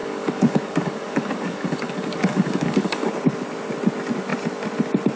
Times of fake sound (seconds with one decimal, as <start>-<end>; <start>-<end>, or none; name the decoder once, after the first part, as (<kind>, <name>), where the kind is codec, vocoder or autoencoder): 0.0-3.1 (codec, DAC)